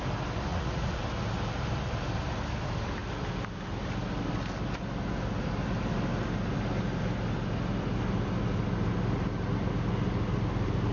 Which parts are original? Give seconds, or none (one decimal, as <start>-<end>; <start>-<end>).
0.0-0.5; 1.0-10.9